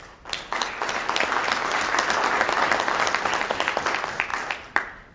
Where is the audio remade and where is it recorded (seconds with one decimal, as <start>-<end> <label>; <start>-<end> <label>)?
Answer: 0.0-4.3 recorded; 4.3-5.1 remade